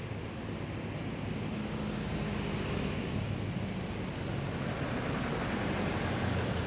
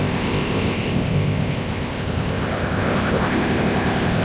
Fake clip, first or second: second